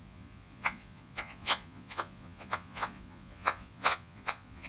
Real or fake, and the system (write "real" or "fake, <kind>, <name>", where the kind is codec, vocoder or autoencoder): fake, vocoder, Vocos